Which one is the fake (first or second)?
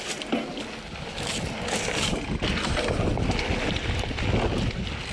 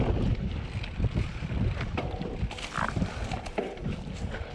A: second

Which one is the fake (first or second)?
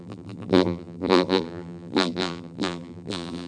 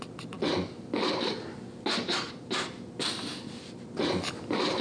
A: first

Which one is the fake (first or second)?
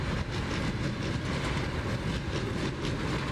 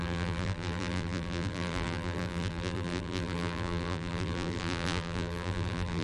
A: second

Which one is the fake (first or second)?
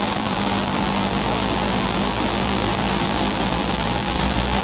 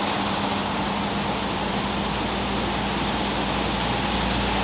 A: first